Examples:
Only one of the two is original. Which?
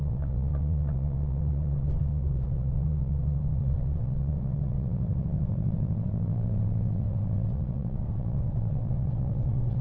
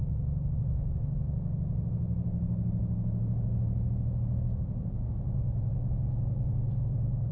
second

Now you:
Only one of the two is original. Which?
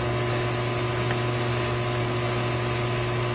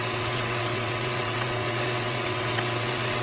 first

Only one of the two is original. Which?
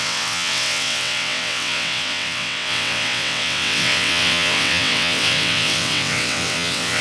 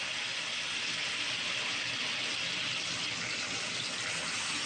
second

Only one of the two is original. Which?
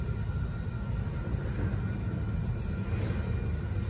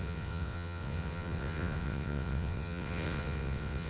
first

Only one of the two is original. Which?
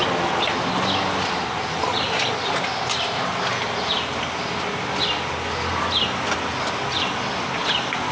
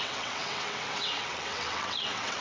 first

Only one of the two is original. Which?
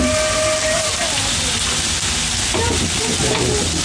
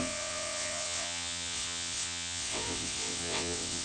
first